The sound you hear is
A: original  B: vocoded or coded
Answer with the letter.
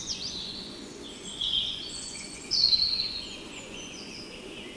B